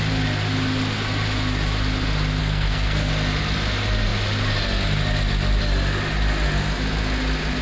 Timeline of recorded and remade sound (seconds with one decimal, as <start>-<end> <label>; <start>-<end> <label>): 0.0-2.4 recorded; 2.4-3.1 remade; 3.1-7.6 recorded